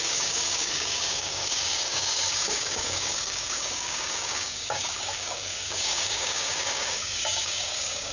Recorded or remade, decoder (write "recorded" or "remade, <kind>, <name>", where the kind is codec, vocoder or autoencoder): remade, codec, DAC